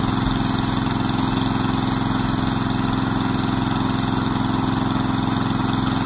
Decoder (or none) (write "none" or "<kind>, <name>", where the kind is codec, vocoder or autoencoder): none